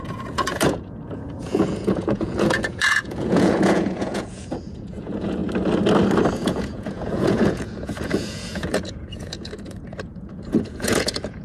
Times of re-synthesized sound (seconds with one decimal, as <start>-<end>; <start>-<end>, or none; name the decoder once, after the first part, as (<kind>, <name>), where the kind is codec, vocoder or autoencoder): 0.0-5.4 (vocoder, Vocos); 6.3-11.4

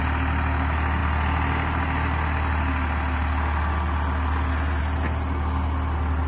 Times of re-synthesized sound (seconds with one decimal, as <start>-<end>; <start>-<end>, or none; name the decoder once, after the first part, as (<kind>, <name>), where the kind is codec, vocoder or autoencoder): none

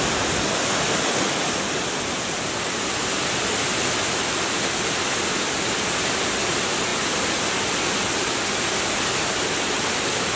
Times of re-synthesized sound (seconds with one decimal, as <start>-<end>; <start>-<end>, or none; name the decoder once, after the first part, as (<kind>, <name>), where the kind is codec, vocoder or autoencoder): none

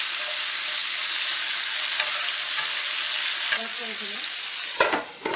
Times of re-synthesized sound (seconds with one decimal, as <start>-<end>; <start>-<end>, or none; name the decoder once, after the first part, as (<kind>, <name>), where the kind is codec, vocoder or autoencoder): none

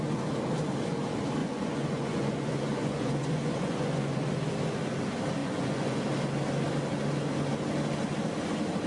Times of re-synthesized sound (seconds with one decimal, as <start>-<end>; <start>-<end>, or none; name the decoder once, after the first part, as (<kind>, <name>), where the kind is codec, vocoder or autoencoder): 1.4-4.3 (vocoder, Vocos); 5.4-6.0